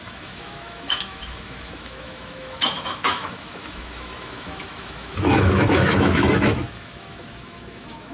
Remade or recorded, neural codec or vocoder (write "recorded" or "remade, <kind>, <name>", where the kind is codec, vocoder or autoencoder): remade, autoencoder, DAC-VAE